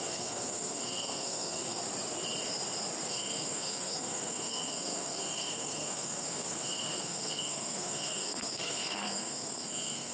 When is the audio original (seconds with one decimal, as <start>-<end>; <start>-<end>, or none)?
1.8-3.1